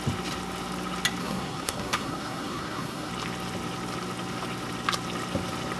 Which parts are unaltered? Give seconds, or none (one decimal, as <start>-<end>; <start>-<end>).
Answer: 0.0-1.2; 3.1-5.8